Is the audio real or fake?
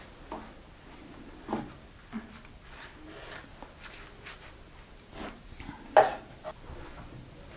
real